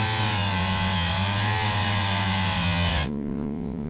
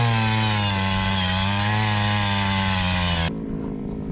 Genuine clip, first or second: second